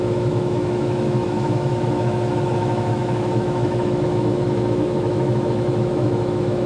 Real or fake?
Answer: fake